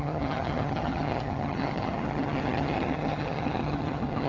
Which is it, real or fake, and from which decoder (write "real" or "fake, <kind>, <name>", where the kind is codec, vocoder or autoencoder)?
fake, vocoder, HiFi-GAN